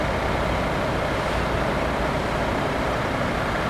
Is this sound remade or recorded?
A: recorded